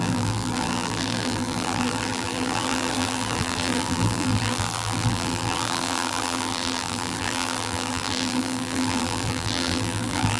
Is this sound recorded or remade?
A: remade